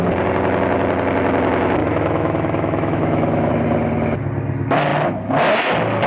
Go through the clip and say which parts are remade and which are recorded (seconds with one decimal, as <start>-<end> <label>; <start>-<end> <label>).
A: 0.0-1.8 recorded; 1.8-3.5 remade; 3.5-6.1 recorded